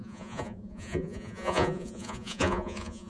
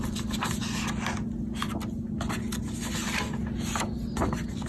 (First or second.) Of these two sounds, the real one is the second